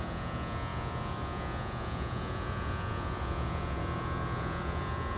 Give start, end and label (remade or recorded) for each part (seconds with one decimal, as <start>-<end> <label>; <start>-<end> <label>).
0.0-5.2 remade